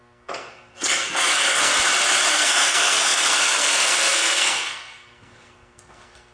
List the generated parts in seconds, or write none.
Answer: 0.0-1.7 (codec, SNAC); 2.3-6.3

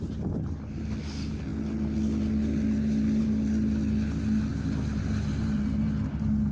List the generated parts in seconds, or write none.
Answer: none

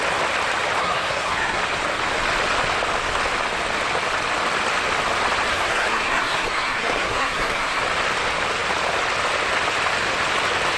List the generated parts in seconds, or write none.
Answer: 0.8-1.6 (codec, SNAC); 5.5-7.8